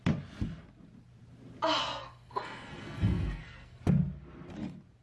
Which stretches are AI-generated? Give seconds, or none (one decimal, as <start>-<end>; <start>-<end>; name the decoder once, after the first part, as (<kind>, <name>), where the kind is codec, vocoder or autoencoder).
1.8-3.8 (codec, SNAC)